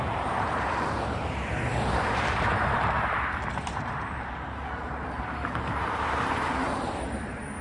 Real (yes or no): no